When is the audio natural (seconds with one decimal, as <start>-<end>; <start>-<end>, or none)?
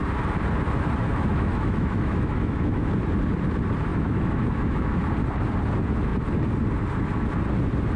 0.0-1.0; 2.9-3.9; 5.0-8.0